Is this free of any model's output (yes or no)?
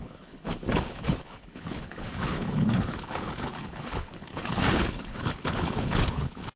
no